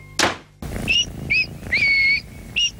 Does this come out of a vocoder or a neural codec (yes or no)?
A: no